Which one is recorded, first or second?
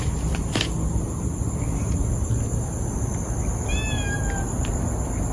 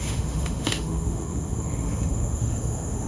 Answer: first